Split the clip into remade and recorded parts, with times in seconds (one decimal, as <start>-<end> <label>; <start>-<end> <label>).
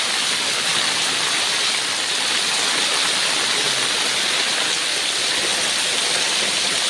0.0-0.7 remade; 0.7-4.8 recorded; 4.8-5.5 remade; 5.5-6.9 recorded